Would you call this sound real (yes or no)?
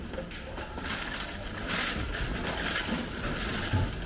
yes